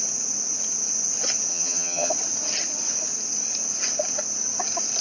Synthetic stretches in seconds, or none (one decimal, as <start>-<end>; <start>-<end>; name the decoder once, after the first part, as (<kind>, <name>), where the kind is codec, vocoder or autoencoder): 1.5-2.1 (vocoder, HiFi-GAN)